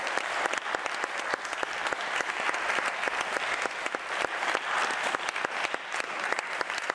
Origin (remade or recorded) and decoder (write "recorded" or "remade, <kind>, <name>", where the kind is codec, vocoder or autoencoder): recorded